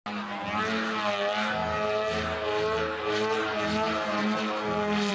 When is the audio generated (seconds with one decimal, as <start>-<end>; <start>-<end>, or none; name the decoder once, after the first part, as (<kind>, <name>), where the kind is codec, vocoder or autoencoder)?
none